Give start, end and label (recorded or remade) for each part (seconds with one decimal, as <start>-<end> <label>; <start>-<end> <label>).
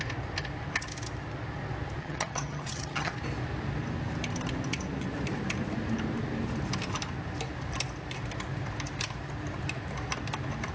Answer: 0.0-2.0 recorded; 2.0-3.1 remade; 3.1-10.7 recorded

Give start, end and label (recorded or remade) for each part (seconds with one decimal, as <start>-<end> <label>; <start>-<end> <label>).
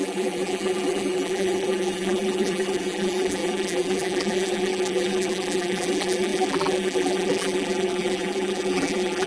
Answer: 0.0-9.3 remade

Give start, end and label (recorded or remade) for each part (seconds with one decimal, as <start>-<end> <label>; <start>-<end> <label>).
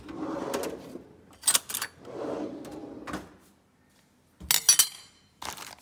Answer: 0.0-5.8 recorded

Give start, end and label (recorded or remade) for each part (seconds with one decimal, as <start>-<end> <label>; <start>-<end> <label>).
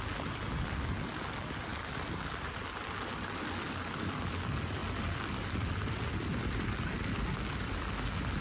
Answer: 0.0-8.4 recorded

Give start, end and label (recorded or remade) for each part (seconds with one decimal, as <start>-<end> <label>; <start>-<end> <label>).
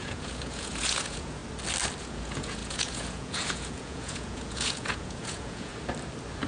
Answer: 0.0-1.4 remade; 1.4-2.0 recorded; 2.0-5.7 remade; 5.7-6.5 recorded